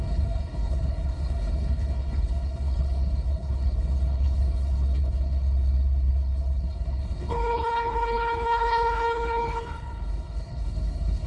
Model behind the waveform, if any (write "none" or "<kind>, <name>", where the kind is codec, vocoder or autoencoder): codec, HILCodec